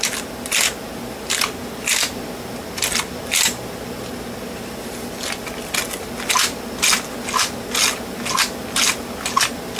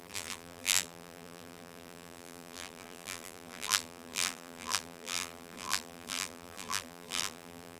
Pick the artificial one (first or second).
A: second